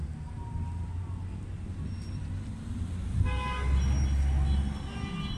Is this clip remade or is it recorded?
recorded